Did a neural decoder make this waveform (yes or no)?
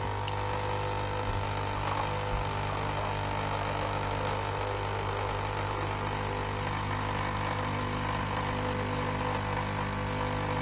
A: no